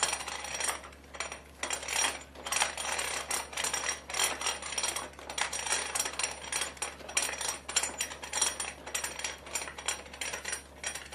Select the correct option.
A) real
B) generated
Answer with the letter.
A